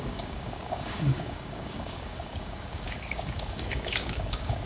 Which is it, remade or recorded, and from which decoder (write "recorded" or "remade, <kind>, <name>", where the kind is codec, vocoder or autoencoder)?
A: remade, codec, DAC